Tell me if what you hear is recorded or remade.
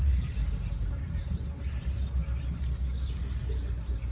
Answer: recorded